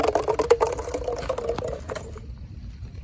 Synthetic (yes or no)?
no